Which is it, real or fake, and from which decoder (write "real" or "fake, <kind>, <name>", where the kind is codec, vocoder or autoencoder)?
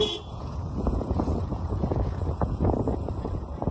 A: fake, vocoder, Vocos